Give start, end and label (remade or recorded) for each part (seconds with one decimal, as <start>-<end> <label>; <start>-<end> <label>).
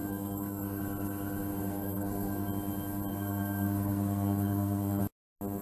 0.0-0.8 remade; 0.8-1.5 recorded; 1.5-2.5 remade; 2.5-3.1 recorded; 3.1-5.0 remade; 5.0-5.6 recorded